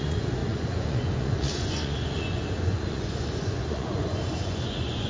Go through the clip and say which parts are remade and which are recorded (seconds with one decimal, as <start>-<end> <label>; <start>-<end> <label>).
0.0-5.1 remade